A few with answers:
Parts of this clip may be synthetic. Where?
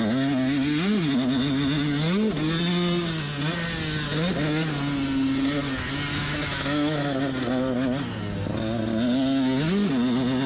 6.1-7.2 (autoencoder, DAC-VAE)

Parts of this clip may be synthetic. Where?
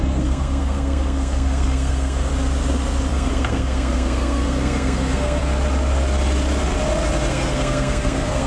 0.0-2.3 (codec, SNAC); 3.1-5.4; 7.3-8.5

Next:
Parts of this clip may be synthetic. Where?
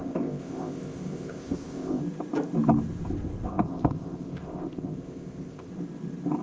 0.0-2.0 (codec, ZipCodec); 3.5-5.7